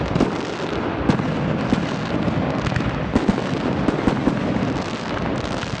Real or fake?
real